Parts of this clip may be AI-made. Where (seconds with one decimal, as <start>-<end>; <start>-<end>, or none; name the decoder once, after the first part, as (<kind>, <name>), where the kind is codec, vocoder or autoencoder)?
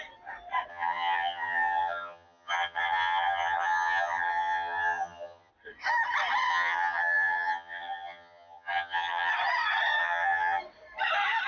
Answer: 0.7-5.5 (vocoder, HiFi-GAN); 6.5-9.3; 10.0-10.6